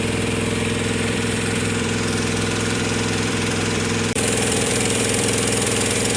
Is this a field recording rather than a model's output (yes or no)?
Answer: no